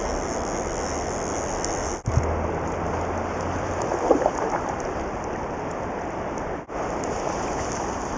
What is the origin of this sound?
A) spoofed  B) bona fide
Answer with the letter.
B